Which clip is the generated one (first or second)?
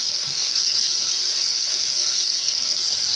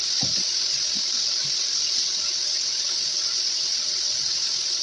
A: first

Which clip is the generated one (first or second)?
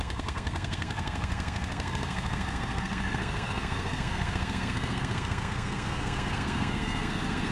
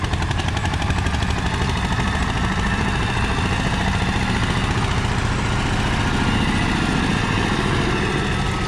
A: first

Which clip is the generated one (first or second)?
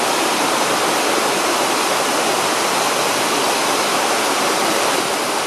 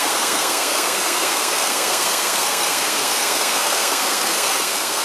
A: second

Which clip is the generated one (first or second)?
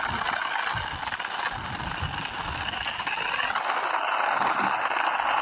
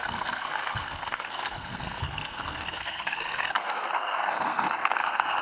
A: second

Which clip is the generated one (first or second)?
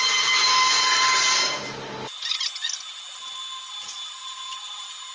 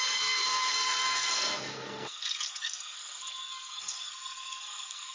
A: second